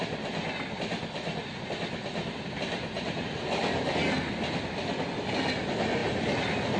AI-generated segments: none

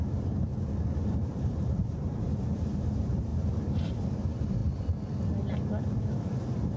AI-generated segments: 0.0-0.5; 1.2-4.6; 6.1-6.8

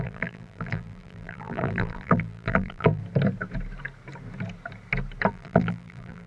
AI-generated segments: 0.0-3.0; 5.3-6.3

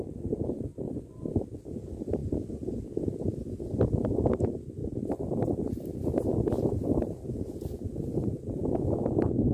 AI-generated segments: 0.7-1.3; 2.2-2.9; 4.8-5.6

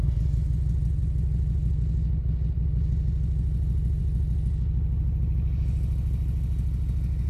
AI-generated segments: none

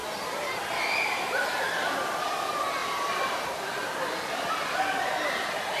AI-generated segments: 0.0-1.6; 2.8-5.8

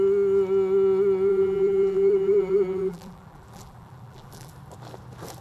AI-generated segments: 1.3-4.5